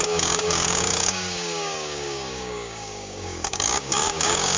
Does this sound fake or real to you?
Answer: fake